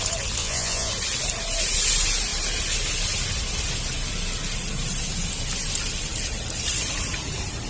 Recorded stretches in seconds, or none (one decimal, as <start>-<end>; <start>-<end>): 0.0-0.4; 0.9-7.7